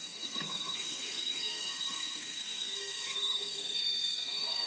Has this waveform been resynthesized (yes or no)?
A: yes